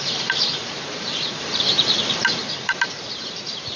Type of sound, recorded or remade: remade